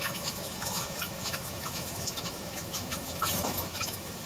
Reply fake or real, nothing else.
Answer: fake